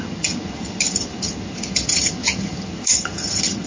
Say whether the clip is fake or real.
fake